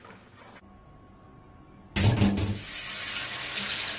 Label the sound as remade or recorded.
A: recorded